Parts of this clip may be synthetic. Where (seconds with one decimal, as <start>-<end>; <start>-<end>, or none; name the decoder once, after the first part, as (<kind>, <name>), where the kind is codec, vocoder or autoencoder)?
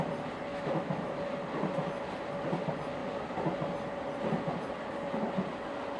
0.5-1.2 (autoencoder, DAC-VAE)